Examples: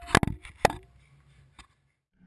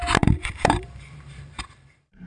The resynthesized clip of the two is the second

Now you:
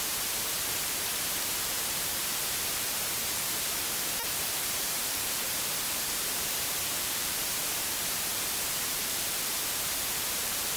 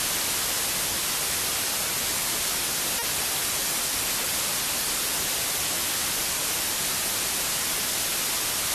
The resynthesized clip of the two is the first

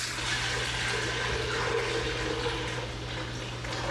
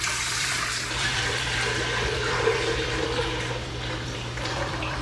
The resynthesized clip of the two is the second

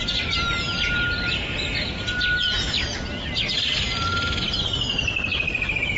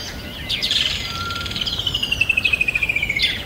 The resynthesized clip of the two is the second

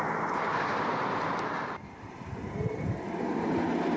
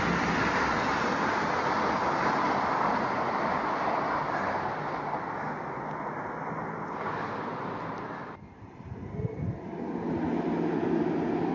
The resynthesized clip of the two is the first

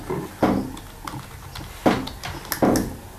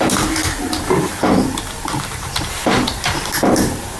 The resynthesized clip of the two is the second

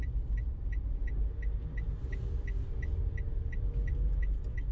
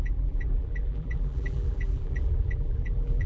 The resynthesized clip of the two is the second